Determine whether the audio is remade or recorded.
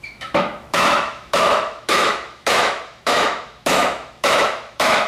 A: remade